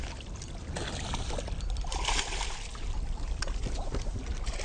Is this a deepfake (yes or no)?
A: no